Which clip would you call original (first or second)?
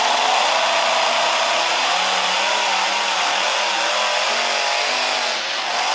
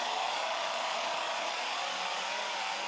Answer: first